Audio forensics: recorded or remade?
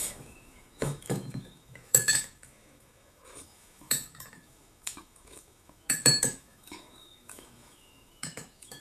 remade